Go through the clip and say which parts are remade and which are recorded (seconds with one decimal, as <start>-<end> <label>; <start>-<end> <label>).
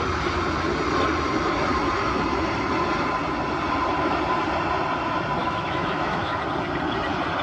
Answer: 0.0-5.4 recorded; 5.4-6.4 remade; 6.4-7.4 recorded